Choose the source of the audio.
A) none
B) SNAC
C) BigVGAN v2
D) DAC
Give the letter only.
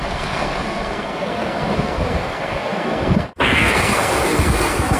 B